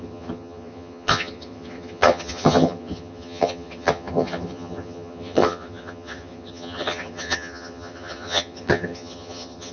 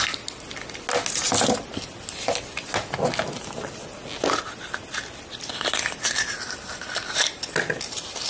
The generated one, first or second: first